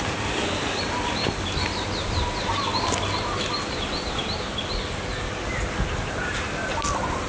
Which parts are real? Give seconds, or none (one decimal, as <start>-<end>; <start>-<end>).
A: 0.0-7.3